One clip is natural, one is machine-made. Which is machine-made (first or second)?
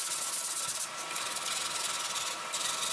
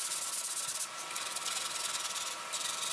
second